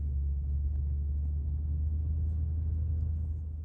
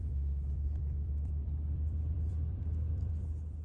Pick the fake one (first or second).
second